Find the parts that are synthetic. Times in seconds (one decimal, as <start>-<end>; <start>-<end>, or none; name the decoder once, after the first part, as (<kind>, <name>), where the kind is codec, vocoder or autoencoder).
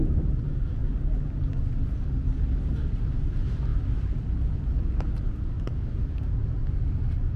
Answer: none